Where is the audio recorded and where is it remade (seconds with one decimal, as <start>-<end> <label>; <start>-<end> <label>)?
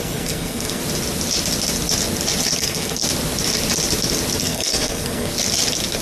0.0-0.8 remade; 0.8-2.6 recorded; 2.6-3.0 remade; 3.0-4.4 recorded; 4.4-5.3 remade; 5.3-6.0 recorded